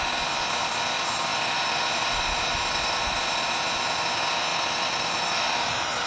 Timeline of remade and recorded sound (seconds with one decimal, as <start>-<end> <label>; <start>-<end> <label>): 0.0-1.3 recorded; 1.3-3.5 remade; 3.5-4.5 recorded; 4.5-5.6 remade; 5.6-6.1 recorded